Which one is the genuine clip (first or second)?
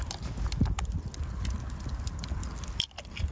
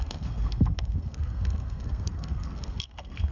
first